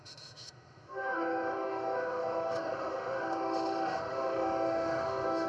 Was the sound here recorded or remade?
remade